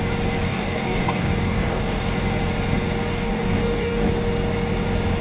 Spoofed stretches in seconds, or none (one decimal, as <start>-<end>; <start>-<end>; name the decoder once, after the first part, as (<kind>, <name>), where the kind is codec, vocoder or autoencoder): 0.5-2.0 (codec, DAC); 3.1-4.1

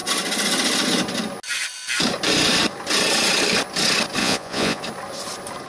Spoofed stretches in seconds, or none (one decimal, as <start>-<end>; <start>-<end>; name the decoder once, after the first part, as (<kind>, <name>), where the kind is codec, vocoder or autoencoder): 4.2-4.8 (vocoder, Vocos)

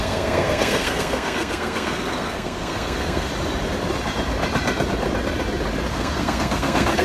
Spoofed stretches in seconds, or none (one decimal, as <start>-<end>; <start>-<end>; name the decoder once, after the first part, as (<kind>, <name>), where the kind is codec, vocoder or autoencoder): 0.0-3.3 (codec, SNAC); 5.9-7.0